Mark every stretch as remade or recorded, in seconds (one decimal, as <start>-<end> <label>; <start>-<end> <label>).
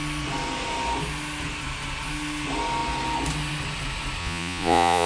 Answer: 0.0-4.2 recorded; 4.2-5.1 remade